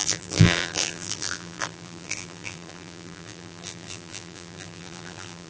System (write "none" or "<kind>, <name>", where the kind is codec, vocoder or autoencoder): vocoder, BigVGAN v2